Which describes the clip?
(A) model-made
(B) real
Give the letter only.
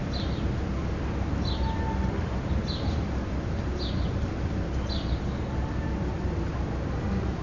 B